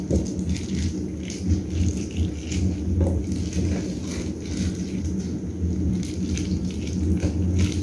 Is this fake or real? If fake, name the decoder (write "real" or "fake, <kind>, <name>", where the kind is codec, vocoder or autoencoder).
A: real